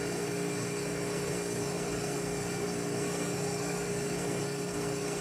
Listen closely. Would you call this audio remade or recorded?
remade